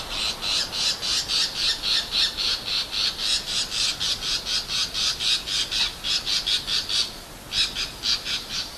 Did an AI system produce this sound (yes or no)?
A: no